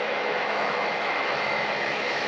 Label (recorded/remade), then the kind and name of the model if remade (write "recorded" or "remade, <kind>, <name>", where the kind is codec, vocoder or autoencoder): remade, autoencoder, DAC-VAE